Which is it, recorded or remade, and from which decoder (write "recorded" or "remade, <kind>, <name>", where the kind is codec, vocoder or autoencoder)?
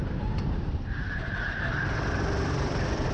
remade, vocoder, BigVGAN v2